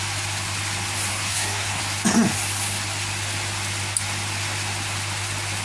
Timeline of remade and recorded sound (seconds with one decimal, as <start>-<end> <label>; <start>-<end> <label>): 0.0-1.1 recorded; 1.1-1.8 remade; 1.8-5.6 recorded